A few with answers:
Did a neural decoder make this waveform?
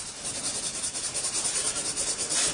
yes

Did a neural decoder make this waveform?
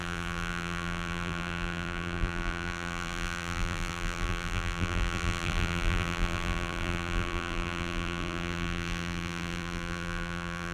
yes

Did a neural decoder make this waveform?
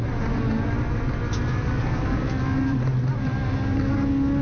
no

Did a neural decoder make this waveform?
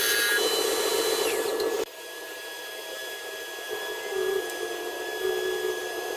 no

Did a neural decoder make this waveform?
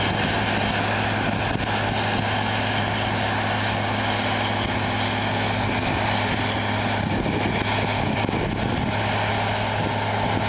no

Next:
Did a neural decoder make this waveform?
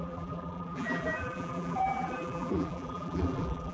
yes